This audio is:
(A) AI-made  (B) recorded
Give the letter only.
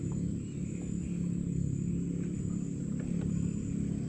B